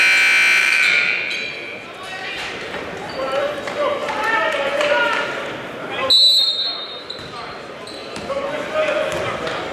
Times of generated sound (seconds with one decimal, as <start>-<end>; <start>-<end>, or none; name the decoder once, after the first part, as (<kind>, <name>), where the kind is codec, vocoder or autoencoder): 0.6-3.4 (vocoder, BigVGAN v2); 4.0-5.2; 8.0-8.5